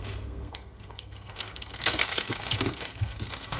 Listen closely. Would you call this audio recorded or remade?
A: remade